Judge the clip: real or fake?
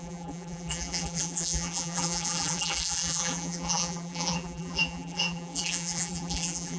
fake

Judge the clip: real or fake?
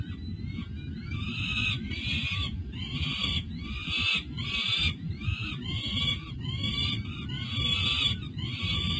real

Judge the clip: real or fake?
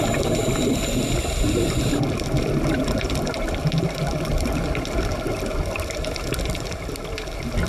fake